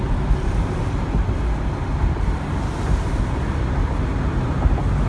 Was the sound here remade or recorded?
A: recorded